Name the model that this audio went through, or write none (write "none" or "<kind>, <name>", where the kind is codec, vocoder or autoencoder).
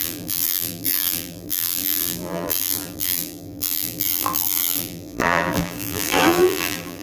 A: vocoder, BigVGAN v2